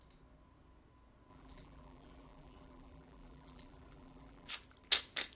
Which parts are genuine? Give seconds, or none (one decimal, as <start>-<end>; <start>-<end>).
0.0-1.3; 4.5-5.4